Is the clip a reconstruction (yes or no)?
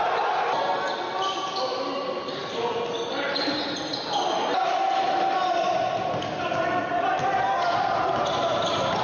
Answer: no